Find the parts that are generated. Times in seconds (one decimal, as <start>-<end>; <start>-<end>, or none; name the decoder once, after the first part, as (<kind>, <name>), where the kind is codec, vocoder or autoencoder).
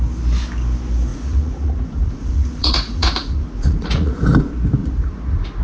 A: 1.1-4.2 (vocoder, Vocos); 4.8-5.6